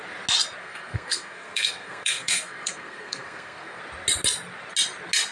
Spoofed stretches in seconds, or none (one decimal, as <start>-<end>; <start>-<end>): 0.6-3.8